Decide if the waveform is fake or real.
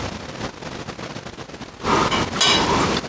real